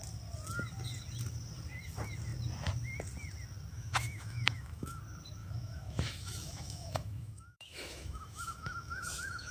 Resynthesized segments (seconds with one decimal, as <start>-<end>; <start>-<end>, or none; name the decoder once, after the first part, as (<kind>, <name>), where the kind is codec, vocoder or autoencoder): 3.7-5.0 (autoencoder, DAC-VAE); 5.4-9.5